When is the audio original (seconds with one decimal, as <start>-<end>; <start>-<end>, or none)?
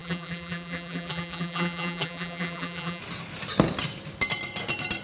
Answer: 3.0-5.0